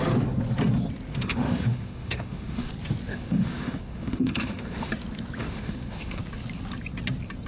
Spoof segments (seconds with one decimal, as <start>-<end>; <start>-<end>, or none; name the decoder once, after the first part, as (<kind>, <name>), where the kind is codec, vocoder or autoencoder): 1.1-2.7 (autoencoder, DAC-VAE); 3.1-4.9; 5.4-6.2